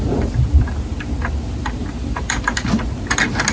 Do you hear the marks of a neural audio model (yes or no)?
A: no